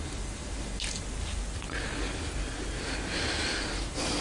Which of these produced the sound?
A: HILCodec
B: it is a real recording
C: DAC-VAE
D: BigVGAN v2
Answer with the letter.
B